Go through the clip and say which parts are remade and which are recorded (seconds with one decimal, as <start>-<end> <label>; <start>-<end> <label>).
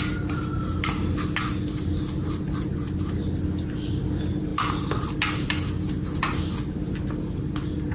0.0-7.9 recorded